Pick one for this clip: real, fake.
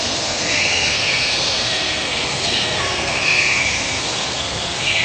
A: fake